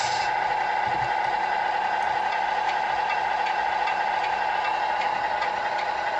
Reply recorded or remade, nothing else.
recorded